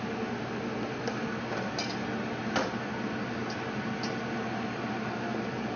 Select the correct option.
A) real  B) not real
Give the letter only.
A